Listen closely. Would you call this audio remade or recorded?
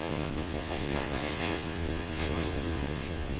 remade